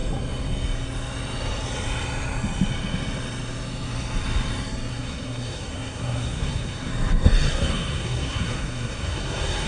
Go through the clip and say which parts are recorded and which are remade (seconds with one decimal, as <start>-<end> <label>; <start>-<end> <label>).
0.0-4.9 recorded; 4.9-6.9 remade; 6.9-7.5 recorded; 7.5-9.7 remade